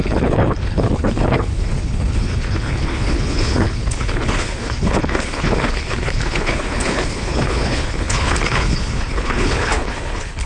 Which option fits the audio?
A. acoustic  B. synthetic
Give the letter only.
B